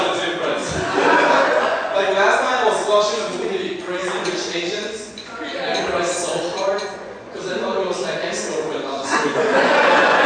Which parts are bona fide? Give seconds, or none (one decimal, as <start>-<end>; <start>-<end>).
0.6-1.6; 5.5-6.1